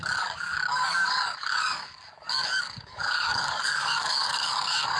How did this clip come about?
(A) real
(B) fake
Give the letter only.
B